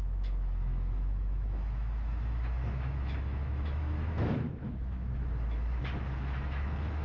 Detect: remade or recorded remade